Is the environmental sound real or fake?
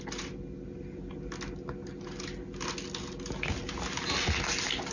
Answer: real